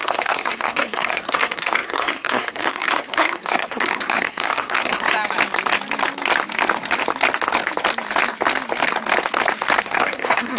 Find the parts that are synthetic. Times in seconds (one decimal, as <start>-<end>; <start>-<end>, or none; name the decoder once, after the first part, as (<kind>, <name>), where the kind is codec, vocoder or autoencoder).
0.0-5.1 (codec, SNAC); 9.8-10.6